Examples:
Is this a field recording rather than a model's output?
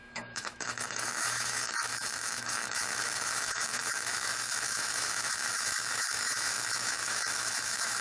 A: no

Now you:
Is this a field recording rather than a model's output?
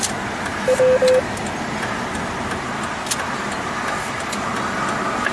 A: yes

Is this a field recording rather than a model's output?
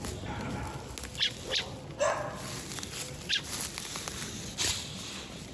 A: yes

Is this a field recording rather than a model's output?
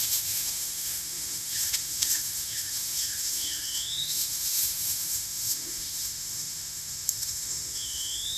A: no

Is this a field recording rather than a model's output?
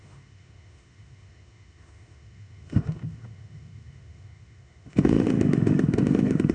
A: no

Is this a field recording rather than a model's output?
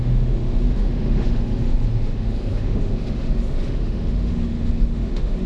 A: no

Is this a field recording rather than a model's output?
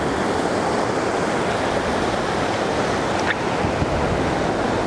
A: yes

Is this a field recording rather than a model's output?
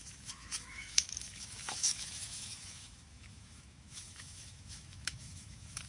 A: no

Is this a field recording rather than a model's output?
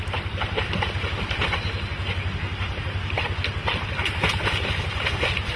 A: yes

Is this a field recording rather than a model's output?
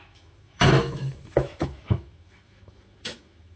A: no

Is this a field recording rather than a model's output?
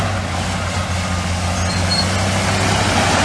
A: yes